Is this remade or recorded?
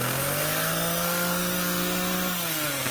remade